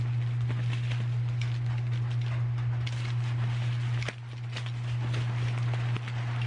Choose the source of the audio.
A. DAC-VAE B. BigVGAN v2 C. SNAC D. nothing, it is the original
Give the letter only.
D